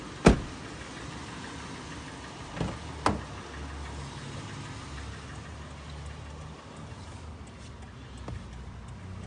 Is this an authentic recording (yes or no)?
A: yes